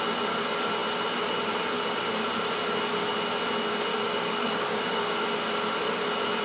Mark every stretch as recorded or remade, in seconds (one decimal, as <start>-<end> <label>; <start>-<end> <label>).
0.0-3.9 recorded; 3.9-5.3 remade; 5.3-6.4 recorded